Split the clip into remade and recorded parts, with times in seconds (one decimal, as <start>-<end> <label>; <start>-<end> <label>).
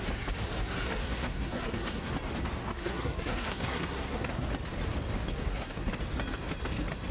0.0-1.0 recorded; 1.0-2.1 remade; 2.1-2.6 recorded; 2.6-4.5 remade; 4.5-5.4 recorded; 5.4-5.9 remade; 5.9-7.1 recorded